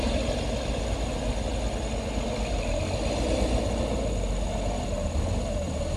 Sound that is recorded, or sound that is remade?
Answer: recorded